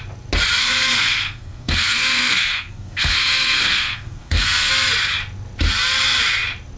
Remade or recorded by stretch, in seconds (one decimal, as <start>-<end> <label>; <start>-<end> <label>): 0.0-0.6 recorded; 0.6-4.7 remade; 4.7-6.8 recorded